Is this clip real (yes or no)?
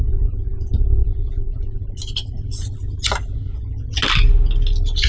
yes